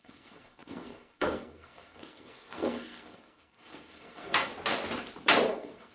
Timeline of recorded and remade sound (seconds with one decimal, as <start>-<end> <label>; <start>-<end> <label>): 0.0-4.5 remade; 4.5-5.5 recorded; 5.5-5.9 remade